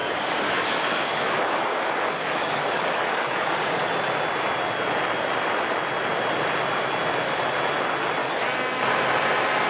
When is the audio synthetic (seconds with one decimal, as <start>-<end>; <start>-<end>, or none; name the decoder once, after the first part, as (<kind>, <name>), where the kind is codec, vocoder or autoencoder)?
0.0-3.9 (codec, DAC); 8.2-8.9